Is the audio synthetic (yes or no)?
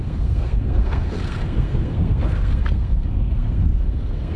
yes